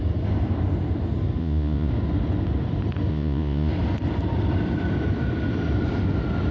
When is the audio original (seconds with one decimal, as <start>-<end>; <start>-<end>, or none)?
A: 0.0-1.4; 1.9-3.1; 3.7-6.5